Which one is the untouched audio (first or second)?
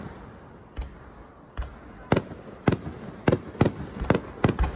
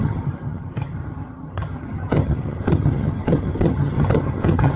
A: first